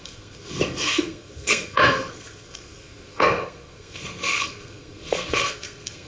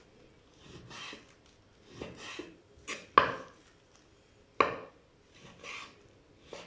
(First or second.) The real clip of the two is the second